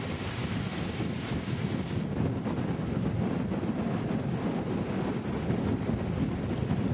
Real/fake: real